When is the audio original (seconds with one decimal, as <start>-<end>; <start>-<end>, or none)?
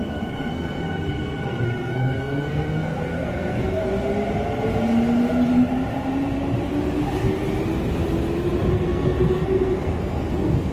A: 3.8-8.7